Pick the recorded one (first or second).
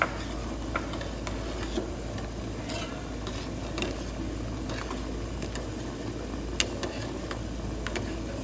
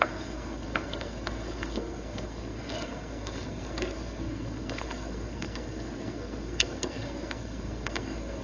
first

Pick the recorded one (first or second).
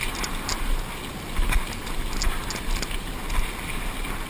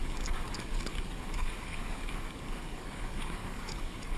first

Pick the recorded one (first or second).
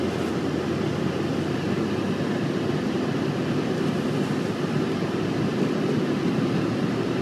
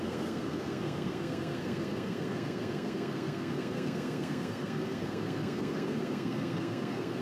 first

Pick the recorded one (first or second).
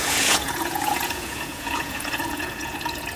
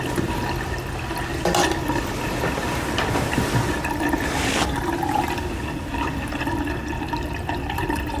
second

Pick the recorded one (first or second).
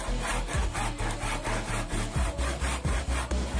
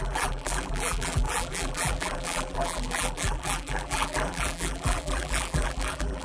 first